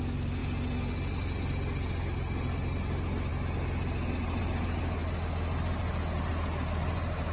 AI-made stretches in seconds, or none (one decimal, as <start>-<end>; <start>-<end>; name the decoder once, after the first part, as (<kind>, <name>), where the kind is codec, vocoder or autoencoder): none